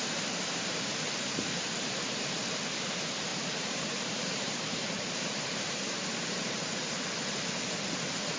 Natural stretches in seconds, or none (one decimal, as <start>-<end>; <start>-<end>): 0.0-3.3; 7.0-8.4